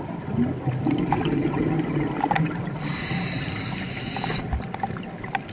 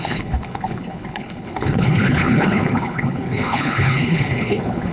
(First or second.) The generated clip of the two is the second